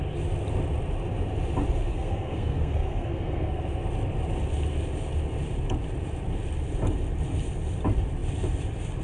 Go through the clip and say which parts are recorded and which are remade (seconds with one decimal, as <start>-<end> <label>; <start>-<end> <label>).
0.0-1.9 recorded; 1.9-3.6 remade; 3.6-9.0 recorded